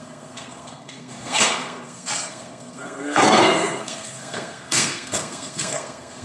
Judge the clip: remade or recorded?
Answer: remade